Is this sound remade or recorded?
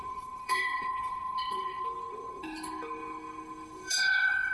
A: remade